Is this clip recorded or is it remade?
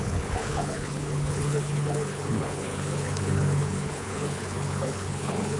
remade